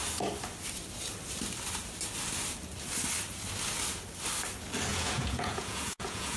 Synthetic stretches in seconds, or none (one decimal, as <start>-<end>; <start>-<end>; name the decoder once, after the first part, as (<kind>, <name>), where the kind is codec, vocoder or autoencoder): 4.9-6.4 (vocoder, Vocos)